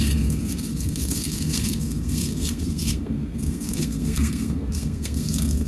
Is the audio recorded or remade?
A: remade